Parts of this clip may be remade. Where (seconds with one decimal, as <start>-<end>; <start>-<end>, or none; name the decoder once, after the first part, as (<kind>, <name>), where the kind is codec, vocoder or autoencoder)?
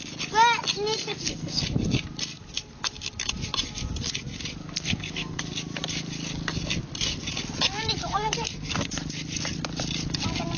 1.0-1.6 (codec, SNAC); 4.6-5.4; 8.1-8.9